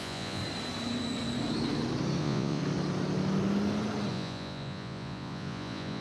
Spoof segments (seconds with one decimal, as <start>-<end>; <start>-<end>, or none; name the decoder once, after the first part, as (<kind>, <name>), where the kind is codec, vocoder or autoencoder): 0.0-0.4 (vocoder, Vocos); 2.2-2.6; 4.1-6.0